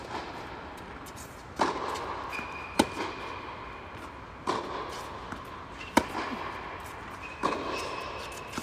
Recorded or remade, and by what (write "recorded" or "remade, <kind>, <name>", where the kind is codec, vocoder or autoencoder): recorded